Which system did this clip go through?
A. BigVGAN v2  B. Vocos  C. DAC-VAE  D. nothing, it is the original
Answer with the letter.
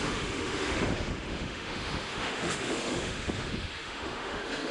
C